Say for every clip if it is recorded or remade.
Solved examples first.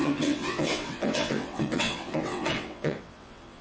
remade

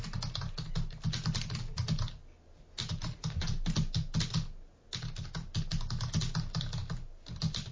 recorded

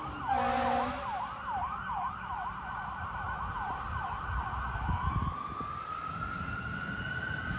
recorded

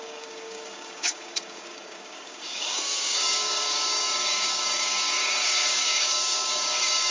remade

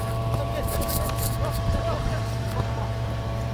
remade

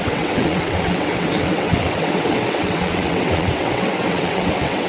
remade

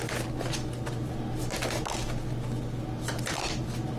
recorded